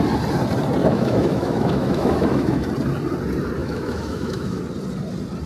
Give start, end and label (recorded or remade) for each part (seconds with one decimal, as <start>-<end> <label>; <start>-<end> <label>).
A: 0.0-0.8 recorded; 0.8-2.7 remade; 2.7-3.6 recorded; 3.6-4.6 remade; 4.6-5.5 recorded